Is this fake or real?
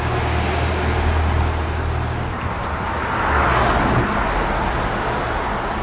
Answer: real